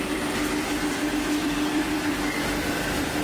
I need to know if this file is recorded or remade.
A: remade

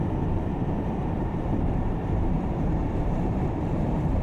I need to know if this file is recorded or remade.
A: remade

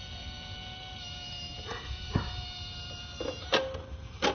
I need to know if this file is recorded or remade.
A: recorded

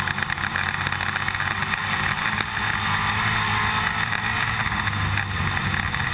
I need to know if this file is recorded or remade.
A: recorded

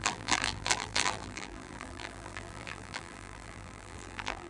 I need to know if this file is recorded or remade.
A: remade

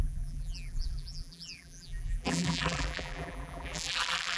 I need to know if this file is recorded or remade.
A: remade